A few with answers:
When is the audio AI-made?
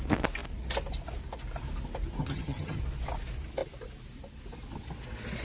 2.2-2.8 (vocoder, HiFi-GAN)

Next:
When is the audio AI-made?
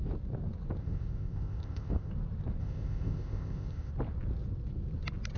0.8-2.1 (codec, ZipCodec); 2.6-3.9